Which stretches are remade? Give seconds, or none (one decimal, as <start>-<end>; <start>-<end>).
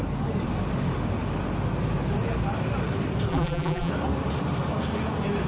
3.3-3.9